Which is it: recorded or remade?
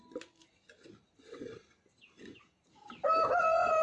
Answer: recorded